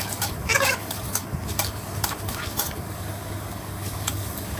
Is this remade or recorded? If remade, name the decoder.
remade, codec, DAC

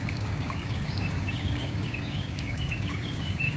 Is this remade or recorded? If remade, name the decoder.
remade, codec, DAC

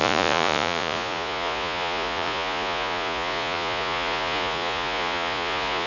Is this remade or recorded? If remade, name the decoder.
remade, vocoder, Vocos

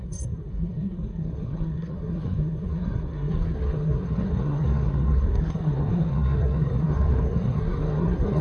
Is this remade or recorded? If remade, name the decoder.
remade, codec, SNAC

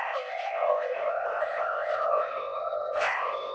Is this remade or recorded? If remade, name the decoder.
remade, codec, ZipCodec